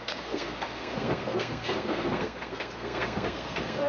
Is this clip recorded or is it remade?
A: remade